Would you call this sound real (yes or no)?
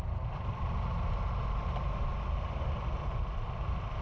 yes